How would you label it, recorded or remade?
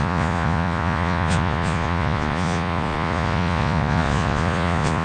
remade